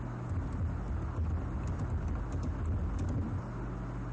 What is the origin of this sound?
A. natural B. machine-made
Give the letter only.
A